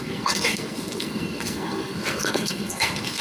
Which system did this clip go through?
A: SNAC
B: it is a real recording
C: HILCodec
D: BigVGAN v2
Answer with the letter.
A